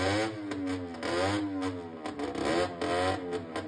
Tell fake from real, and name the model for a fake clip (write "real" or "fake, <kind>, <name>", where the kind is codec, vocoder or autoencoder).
real